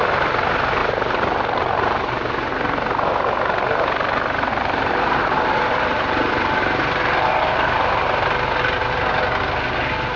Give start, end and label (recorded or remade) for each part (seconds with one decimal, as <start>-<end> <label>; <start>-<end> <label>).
0.0-0.8 recorded; 0.8-2.5 remade; 2.5-4.5 recorded; 4.5-6.3 remade; 6.3-10.2 recorded